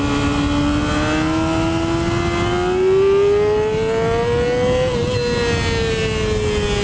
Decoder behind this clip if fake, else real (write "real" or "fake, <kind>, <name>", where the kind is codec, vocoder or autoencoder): real